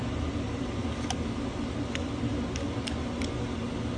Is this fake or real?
real